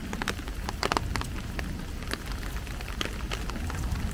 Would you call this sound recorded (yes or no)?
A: yes